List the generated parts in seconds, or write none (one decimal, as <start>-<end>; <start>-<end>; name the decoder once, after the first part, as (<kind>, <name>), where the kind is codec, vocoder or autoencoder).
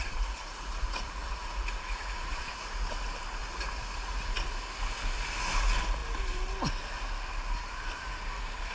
0.0-2.9 (vocoder, Vocos); 3.4-4.3